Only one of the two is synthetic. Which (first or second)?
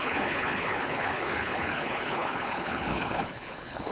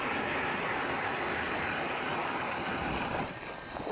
first